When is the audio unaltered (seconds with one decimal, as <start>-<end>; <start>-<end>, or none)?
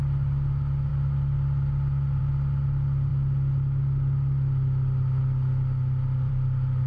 0.0-6.9